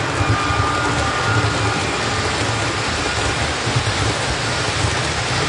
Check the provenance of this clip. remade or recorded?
recorded